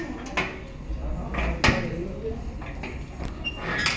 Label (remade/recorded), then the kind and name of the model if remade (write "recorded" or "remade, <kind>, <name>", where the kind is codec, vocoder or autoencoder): recorded